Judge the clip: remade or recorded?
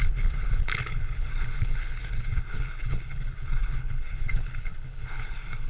remade